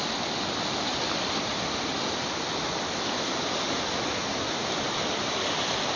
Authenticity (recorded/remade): recorded